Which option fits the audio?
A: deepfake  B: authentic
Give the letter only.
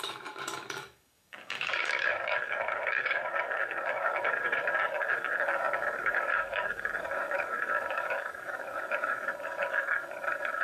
A